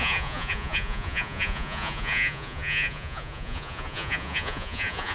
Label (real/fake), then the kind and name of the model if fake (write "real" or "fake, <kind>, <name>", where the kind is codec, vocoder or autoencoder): fake, vocoder, Vocos